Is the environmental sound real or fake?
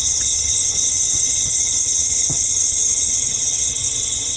fake